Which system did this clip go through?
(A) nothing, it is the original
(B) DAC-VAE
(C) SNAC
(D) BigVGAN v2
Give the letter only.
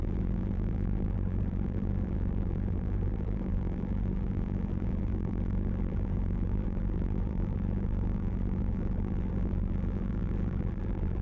D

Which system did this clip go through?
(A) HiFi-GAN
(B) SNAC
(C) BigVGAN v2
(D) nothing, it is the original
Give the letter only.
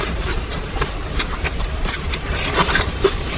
C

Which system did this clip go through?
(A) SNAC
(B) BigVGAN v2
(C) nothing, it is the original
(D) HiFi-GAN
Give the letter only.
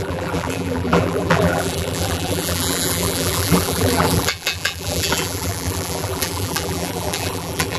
B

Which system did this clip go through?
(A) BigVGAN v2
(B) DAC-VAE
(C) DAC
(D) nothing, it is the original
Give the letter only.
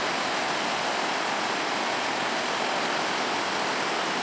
D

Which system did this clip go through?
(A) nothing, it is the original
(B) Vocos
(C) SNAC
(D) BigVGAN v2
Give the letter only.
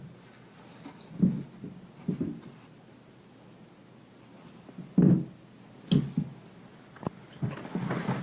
A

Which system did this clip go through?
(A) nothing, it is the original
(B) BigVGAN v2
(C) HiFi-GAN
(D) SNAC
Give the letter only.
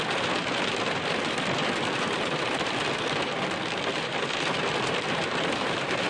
B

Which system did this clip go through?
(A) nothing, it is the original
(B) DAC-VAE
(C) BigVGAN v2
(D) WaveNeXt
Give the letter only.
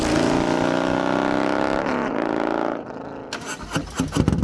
A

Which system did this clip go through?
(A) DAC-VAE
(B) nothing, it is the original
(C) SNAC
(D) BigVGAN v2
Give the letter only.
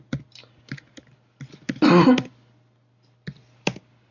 B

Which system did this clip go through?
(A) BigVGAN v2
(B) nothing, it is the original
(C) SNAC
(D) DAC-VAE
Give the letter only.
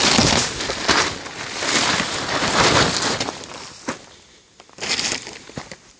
B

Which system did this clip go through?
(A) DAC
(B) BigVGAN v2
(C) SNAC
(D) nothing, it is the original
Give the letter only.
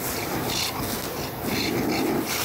D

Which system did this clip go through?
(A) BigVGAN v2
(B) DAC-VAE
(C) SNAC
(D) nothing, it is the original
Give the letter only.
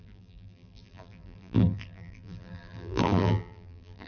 A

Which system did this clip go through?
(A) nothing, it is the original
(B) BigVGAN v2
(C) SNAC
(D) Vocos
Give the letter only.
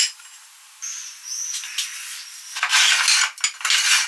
A